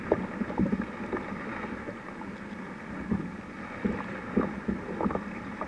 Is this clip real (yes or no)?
yes